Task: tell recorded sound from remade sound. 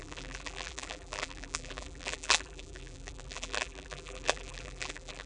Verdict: remade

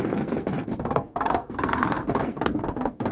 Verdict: remade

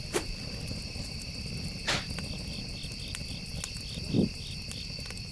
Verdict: recorded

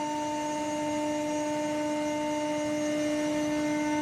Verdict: recorded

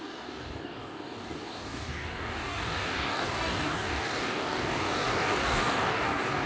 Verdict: remade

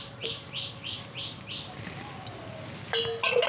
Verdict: recorded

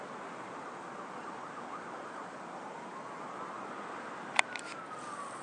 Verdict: recorded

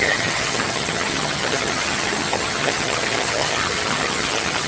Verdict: remade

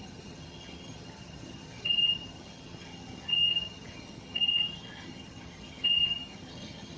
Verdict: remade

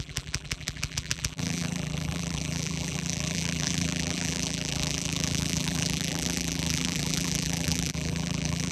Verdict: remade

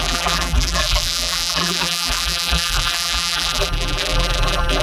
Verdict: remade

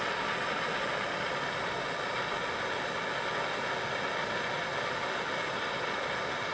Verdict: recorded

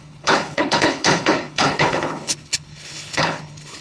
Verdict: remade